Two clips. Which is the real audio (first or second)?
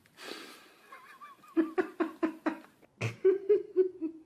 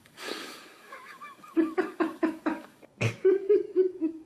first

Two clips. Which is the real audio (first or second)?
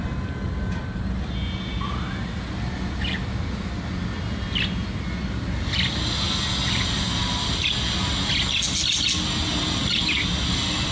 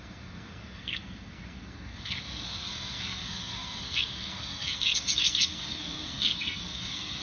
first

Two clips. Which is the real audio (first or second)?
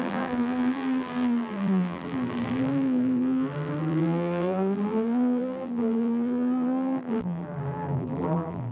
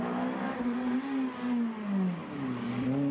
second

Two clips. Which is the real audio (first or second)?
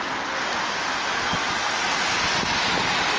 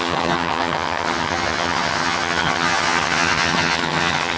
first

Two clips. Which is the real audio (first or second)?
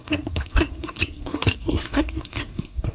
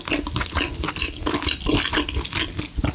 second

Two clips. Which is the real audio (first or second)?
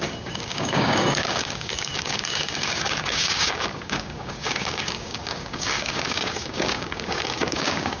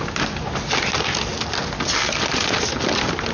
second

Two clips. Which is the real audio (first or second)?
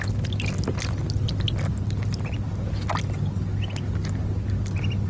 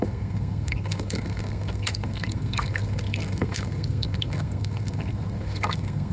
first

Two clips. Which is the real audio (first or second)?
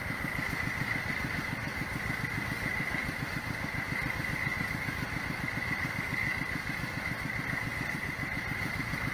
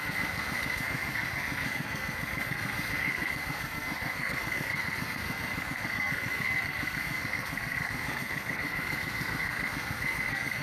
first